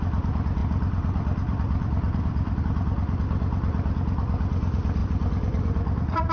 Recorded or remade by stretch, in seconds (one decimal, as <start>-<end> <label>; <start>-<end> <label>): 0.0-0.6 recorded; 0.6-2.6 remade; 2.6-5.0 recorded; 5.0-6.3 remade